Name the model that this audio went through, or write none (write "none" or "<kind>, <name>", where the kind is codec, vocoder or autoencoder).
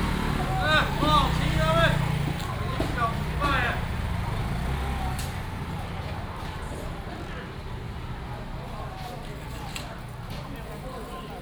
none